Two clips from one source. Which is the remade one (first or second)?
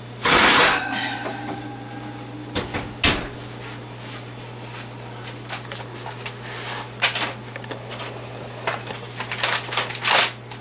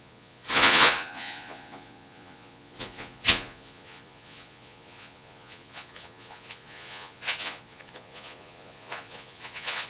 second